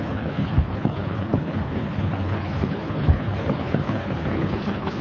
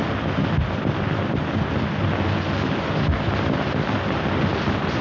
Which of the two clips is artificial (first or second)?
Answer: first